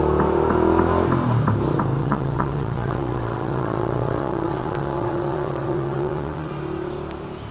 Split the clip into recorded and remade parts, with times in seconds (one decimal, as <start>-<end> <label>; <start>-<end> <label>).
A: 0.0-2.0 recorded; 2.0-6.5 remade; 6.5-7.5 recorded